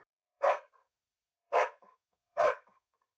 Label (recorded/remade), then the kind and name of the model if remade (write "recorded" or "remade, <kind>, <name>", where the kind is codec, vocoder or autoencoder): remade, codec, SNAC